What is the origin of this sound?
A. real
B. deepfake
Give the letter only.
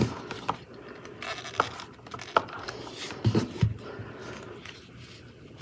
A